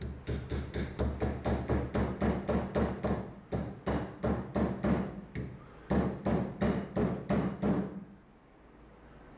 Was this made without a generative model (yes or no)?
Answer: yes